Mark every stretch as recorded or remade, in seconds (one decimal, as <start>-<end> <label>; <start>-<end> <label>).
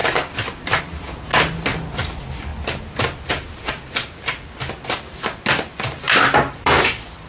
0.0-7.3 recorded